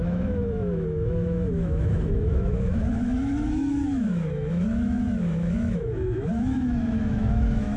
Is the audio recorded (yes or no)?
no